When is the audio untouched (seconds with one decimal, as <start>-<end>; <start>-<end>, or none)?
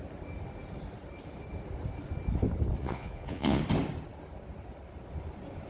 0.0-2.8; 3.6-5.7